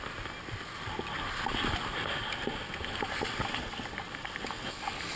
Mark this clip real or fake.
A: real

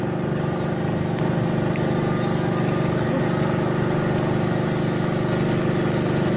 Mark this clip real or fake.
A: real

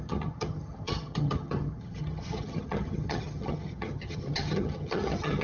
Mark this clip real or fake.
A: fake